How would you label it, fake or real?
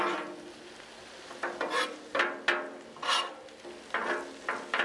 real